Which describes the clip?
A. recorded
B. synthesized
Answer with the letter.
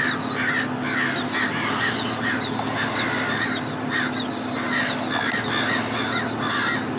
A